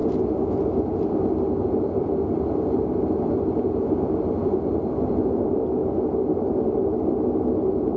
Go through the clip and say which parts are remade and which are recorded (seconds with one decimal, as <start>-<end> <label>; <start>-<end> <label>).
0.0-1.7 recorded; 1.7-8.0 remade